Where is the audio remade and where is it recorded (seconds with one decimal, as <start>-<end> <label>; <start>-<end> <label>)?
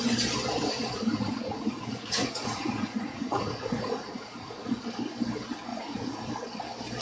0.0-0.6 recorded; 0.6-4.8 remade; 4.8-5.7 recorded; 5.7-6.3 remade; 6.3-7.0 recorded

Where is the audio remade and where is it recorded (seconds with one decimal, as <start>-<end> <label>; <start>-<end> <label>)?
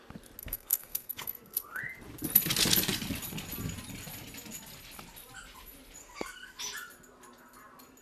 0.0-0.4 recorded; 0.4-1.8 remade; 1.8-6.0 recorded; 6.0-6.6 remade; 6.6-8.0 recorded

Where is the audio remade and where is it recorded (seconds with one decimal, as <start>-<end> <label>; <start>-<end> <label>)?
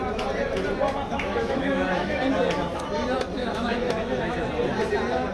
0.0-1.1 recorded; 1.1-2.2 remade; 2.2-3.4 recorded; 3.4-4.4 remade; 4.4-5.3 recorded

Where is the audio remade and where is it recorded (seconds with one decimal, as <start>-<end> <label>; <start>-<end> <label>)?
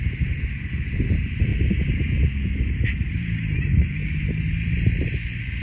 0.0-1.5 remade; 1.5-2.6 recorded; 2.6-4.0 remade; 4.0-5.6 recorded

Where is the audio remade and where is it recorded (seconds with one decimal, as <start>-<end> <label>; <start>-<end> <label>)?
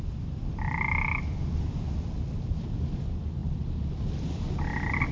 0.0-5.1 recorded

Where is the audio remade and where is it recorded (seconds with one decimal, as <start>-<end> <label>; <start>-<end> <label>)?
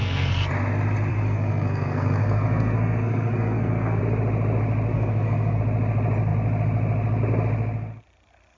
0.0-0.5 remade; 0.5-1.1 recorded; 1.1-4.0 remade; 4.0-4.9 recorded; 4.9-5.6 remade; 5.6-8.6 recorded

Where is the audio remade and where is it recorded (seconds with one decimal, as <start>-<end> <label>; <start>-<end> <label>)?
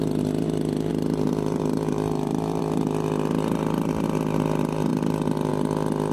0.0-0.9 recorded; 0.9-2.6 remade; 2.6-6.1 recorded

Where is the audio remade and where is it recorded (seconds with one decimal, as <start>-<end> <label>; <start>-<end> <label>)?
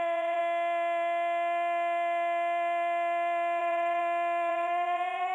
0.0-0.4 remade; 0.4-3.6 recorded; 3.6-4.0 remade; 4.0-4.5 recorded; 4.5-5.3 remade